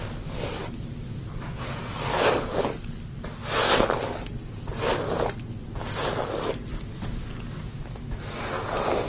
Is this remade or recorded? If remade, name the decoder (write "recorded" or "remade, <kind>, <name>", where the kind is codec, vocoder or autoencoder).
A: recorded